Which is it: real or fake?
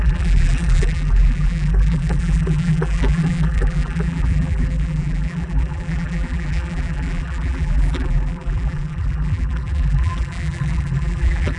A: fake